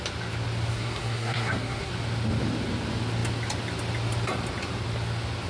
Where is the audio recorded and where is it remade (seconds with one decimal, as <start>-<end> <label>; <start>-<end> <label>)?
0.0-0.7 recorded; 0.7-1.9 remade; 1.9-5.5 recorded

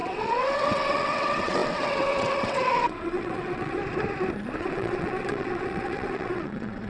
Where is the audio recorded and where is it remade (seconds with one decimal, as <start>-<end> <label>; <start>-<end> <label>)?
0.0-3.8 remade; 3.8-4.6 recorded; 4.6-6.9 remade

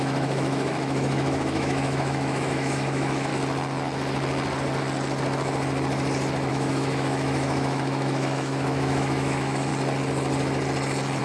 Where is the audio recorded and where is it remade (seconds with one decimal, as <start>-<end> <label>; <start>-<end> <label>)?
0.0-3.3 remade; 3.3-6.5 recorded; 6.5-9.7 remade; 9.7-11.2 recorded

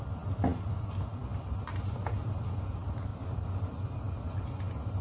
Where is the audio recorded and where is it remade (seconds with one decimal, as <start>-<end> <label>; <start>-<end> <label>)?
0.0-5.0 recorded

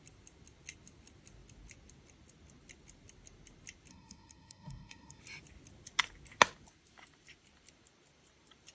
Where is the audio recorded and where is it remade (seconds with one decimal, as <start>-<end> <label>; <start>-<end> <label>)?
0.0-3.9 recorded; 3.9-5.2 remade; 5.2-8.7 recorded

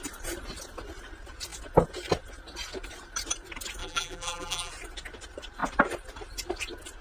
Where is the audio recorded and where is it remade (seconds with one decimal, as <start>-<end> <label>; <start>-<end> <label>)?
0.0-3.8 recorded; 3.8-4.7 remade; 4.7-7.0 recorded

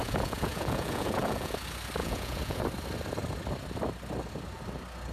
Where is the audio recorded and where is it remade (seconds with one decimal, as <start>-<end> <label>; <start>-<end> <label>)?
0.0-1.5 remade; 1.5-2.0 recorded; 2.0-2.6 remade; 2.6-5.1 recorded